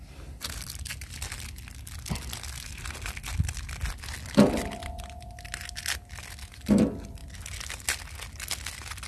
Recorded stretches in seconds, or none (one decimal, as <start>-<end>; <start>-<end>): 0.0-9.1